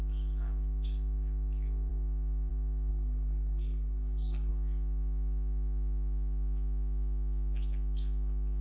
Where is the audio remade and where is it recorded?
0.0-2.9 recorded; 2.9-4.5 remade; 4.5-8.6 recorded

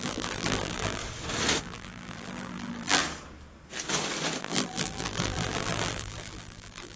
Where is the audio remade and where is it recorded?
0.0-1.0 remade; 1.0-1.6 recorded; 1.6-3.0 remade; 3.0-4.4 recorded; 4.4-7.0 remade

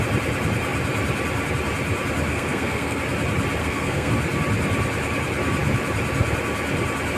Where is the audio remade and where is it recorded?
0.0-2.3 recorded; 2.3-3.0 remade; 3.0-3.6 recorded; 3.6-4.1 remade; 4.1-7.2 recorded

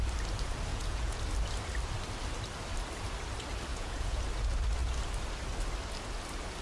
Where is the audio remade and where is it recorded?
0.0-0.7 recorded; 0.7-1.2 remade; 1.2-3.7 recorded; 3.7-4.2 remade; 4.2-6.6 recorded